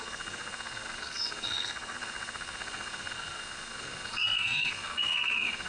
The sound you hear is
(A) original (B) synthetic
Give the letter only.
B